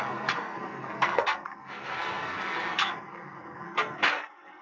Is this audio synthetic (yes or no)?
yes